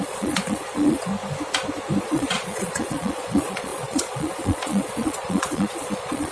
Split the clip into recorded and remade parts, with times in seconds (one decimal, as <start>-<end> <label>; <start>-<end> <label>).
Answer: 0.0-1.1 remade; 1.1-2.0 recorded; 2.0-6.3 remade